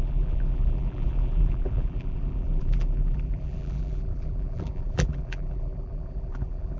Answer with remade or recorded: remade